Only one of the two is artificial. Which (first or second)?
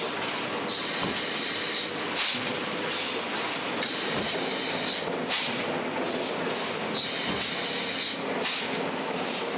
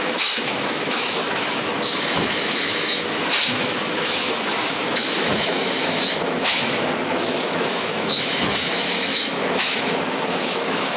second